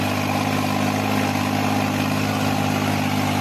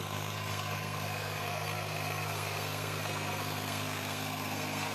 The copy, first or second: second